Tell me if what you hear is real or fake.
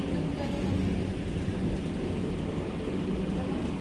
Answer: real